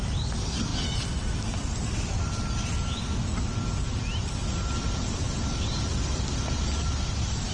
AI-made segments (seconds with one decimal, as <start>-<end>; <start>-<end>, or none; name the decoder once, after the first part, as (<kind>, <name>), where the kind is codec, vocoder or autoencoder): none